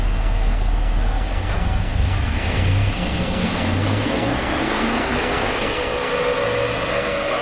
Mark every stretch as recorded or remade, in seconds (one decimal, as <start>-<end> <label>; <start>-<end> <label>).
0.0-6.1 remade; 6.1-6.9 recorded; 6.9-7.4 remade

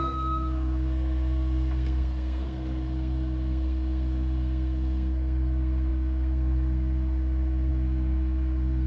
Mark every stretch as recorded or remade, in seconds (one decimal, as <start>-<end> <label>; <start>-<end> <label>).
0.0-8.9 remade

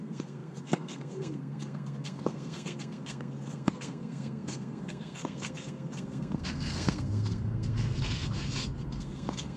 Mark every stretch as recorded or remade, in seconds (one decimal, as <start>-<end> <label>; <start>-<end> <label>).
0.0-9.6 remade

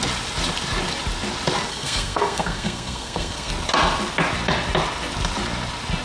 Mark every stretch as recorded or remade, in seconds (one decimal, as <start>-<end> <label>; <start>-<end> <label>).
0.0-1.7 recorded; 1.7-3.5 remade; 3.5-6.0 recorded

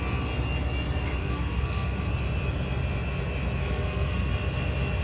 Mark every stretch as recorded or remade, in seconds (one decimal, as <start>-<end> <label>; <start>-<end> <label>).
0.0-1.2 recorded; 1.2-2.0 remade; 2.0-3.6 recorded; 3.6-4.3 remade; 4.3-5.0 recorded

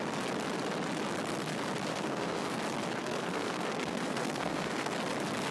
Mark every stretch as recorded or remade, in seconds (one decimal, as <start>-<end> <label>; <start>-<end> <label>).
0.0-1.9 recorded; 1.9-2.6 remade; 2.6-3.0 recorded; 3.0-4.9 remade; 4.9-5.5 recorded

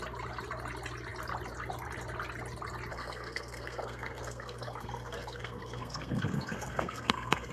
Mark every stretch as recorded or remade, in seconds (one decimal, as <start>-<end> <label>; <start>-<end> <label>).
0.0-2.9 recorded; 2.9-7.5 remade